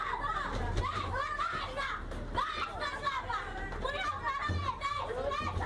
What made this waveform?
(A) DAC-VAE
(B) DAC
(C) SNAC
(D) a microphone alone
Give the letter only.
D